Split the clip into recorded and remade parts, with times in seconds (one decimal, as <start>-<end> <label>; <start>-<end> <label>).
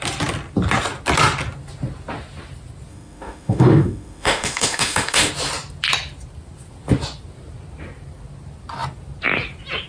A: 0.0-2.9 recorded; 2.9-5.3 remade; 5.3-9.9 recorded